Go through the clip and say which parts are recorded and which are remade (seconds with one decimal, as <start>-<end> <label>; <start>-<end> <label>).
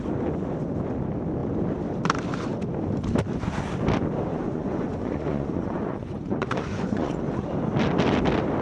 0.0-4.3 recorded; 4.3-7.2 remade; 7.2-8.6 recorded